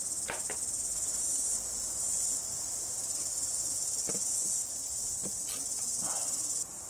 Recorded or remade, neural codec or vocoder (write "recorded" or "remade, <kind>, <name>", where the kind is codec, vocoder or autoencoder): recorded